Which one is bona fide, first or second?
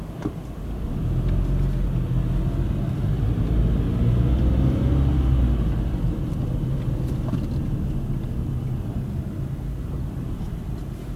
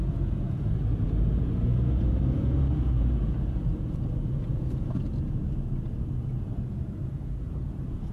first